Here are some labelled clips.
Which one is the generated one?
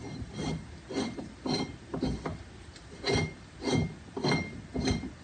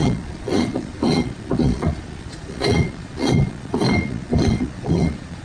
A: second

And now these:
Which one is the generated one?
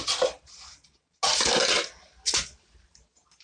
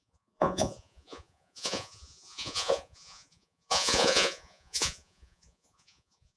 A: second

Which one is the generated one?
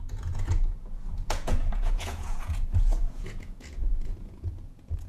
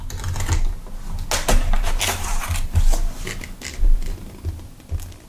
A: first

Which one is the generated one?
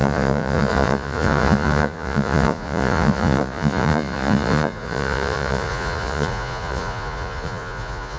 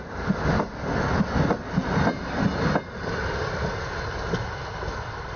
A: first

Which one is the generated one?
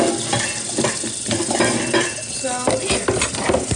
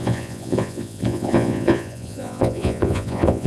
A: second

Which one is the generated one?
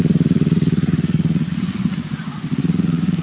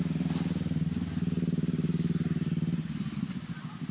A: first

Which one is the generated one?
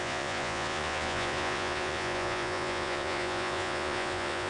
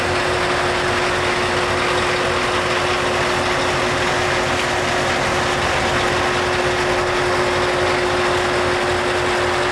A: first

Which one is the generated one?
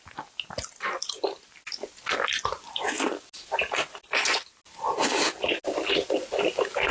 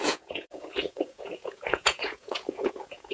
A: second